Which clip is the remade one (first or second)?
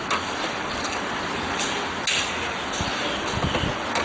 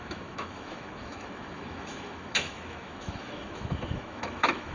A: second